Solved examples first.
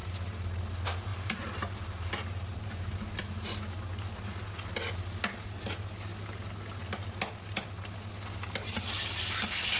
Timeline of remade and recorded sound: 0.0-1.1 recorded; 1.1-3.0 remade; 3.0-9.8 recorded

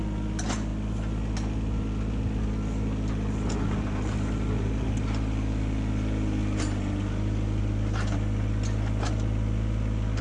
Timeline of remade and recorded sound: 0.0-10.2 recorded

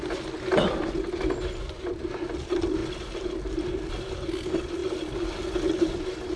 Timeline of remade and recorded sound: 0.0-6.4 recorded